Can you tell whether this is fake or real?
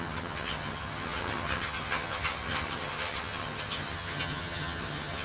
fake